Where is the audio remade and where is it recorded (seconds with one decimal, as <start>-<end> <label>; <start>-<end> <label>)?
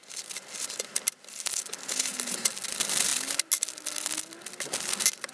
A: 0.0-5.3 recorded